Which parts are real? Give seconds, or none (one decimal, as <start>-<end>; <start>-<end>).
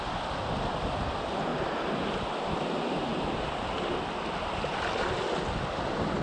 1.5-2.4; 3.1-5.0